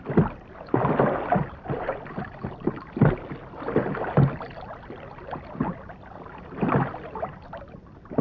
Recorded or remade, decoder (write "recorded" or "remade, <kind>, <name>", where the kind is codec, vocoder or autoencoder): recorded